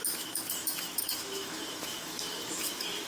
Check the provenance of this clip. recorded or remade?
remade